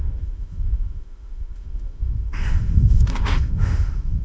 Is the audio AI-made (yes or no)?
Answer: yes